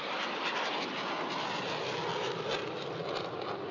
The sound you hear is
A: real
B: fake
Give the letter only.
A